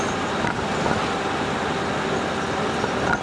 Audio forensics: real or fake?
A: real